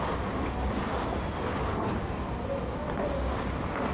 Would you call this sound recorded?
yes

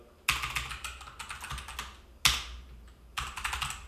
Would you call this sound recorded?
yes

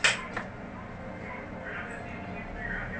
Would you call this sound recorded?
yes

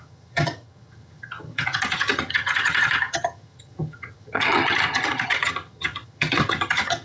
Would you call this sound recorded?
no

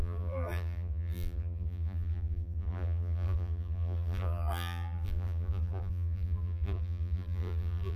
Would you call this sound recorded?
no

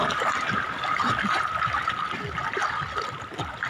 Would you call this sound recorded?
yes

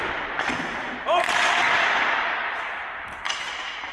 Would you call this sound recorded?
yes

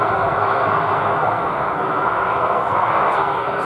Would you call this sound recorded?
no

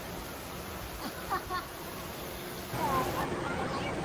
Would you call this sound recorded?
no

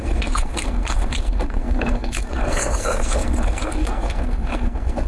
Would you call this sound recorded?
no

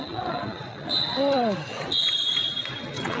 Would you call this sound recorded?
no